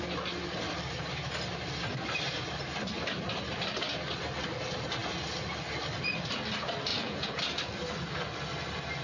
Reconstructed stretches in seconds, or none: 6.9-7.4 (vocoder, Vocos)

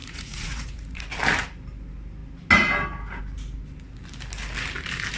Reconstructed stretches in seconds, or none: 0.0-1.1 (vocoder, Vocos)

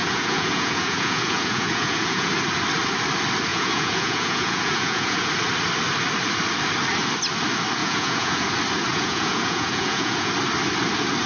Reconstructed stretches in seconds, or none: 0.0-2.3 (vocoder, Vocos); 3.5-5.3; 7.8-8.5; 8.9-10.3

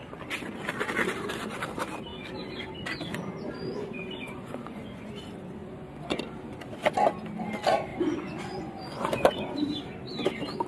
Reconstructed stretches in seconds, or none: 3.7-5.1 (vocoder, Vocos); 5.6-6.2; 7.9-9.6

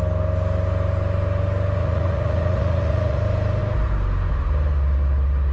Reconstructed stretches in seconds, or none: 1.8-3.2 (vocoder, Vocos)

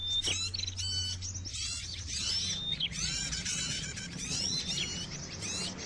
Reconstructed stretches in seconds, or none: 1.5-2.3 (vocoder, Vocos); 2.7-4.6

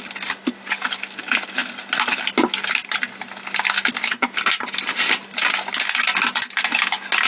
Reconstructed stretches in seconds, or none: none

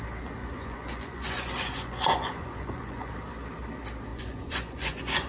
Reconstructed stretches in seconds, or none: 0.4-3.1 (vocoder, Vocos); 4.1-5.3